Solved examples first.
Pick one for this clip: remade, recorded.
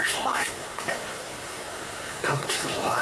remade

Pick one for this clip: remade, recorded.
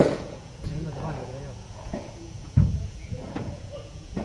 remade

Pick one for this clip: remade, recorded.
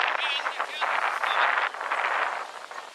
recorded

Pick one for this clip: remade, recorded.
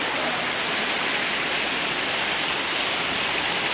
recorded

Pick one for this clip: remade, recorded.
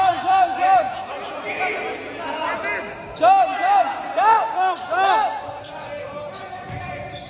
recorded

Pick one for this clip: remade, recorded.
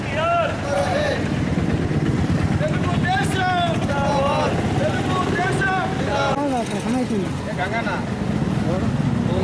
recorded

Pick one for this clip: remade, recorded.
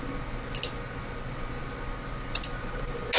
recorded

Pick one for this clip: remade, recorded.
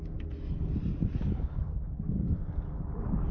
recorded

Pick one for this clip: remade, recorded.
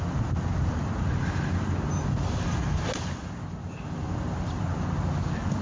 recorded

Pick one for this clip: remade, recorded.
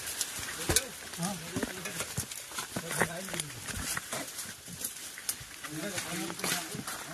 recorded